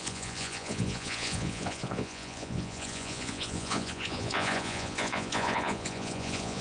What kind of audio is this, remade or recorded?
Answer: remade